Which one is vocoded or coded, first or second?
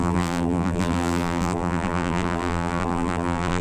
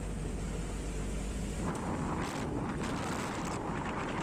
first